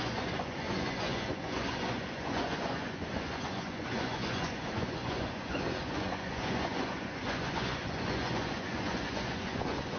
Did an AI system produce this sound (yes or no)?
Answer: yes